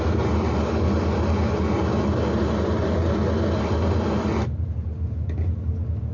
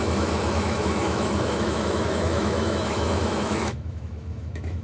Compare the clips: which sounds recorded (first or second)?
first